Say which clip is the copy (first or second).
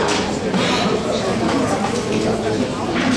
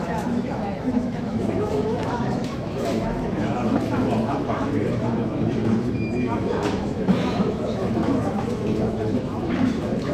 second